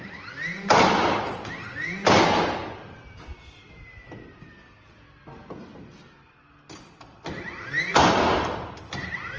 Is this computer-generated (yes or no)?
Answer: no